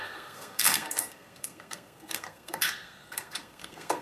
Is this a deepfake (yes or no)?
yes